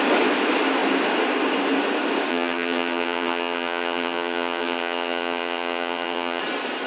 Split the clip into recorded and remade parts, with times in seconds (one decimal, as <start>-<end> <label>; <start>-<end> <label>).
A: 0.0-2.3 recorded; 2.3-6.4 remade; 6.4-6.9 recorded